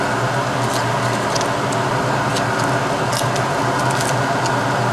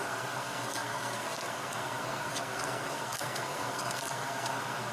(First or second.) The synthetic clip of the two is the second